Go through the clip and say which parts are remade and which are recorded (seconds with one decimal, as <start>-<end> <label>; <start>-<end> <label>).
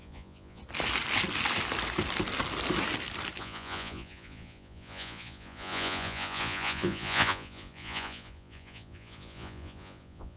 0.0-0.6 remade; 0.6-3.4 recorded; 3.4-10.4 remade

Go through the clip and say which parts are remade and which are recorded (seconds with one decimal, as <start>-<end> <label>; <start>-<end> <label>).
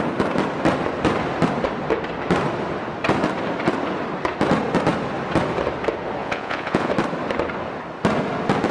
0.0-6.2 recorded; 6.2-6.9 remade; 6.9-8.7 recorded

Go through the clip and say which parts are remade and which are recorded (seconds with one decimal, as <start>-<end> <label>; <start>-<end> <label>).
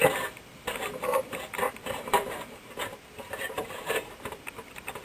0.0-1.8 recorded; 1.8-2.6 remade; 2.6-5.0 recorded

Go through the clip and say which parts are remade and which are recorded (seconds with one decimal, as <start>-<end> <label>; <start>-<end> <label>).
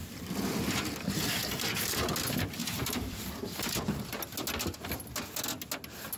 0.0-2.1 remade; 2.1-2.6 recorded; 2.6-3.8 remade; 3.8-6.2 recorded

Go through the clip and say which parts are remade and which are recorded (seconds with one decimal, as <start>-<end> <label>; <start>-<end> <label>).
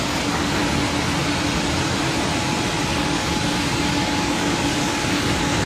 0.0-0.6 remade; 0.6-2.9 recorded; 2.9-5.7 remade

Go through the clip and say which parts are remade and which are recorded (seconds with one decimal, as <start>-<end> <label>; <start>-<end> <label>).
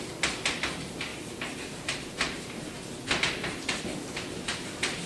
0.0-4.5 recorded; 4.5-5.1 remade